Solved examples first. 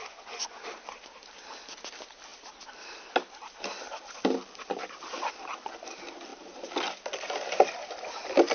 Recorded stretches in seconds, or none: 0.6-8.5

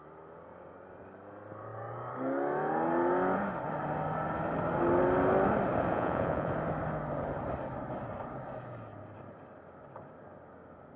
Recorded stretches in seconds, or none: 0.0-5.9; 6.5-11.0

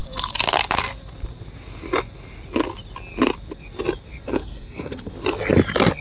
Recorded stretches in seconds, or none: 0.0-4.3; 5.1-6.0